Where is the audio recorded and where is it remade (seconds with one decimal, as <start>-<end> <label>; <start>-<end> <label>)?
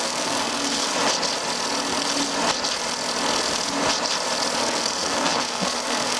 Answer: 0.0-0.9 remade; 0.9-4.6 recorded; 4.6-6.2 remade